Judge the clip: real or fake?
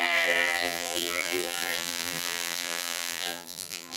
fake